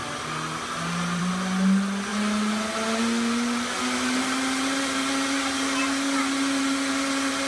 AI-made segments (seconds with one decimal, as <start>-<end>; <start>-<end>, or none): none